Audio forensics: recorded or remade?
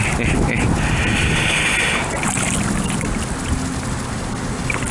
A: recorded